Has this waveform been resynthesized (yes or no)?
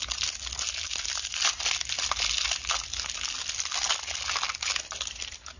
no